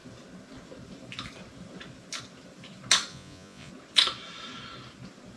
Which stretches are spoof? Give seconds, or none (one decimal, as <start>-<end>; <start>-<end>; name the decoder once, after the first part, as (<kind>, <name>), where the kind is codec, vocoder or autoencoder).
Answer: 3.1-3.7 (vocoder, Vocos)